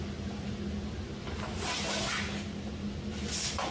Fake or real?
real